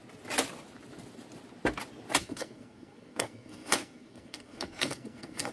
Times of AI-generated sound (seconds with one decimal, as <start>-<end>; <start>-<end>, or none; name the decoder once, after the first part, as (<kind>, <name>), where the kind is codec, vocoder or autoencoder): 2.2-5.5 (codec, SNAC)